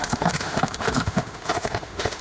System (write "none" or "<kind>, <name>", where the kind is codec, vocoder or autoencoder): autoencoder, DAC-VAE